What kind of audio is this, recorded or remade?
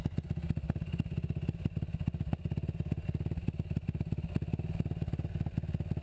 recorded